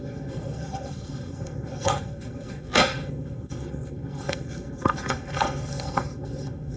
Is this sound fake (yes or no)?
yes